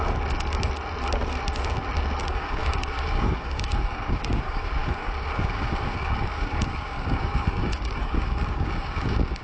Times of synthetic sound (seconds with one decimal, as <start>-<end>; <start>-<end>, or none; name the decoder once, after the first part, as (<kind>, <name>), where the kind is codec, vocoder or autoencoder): 2.2-9.4 (codec, DAC)